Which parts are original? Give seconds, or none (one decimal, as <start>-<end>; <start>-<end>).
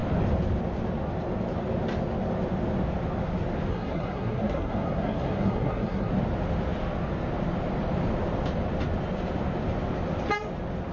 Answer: 0.0-3.7; 6.1-10.9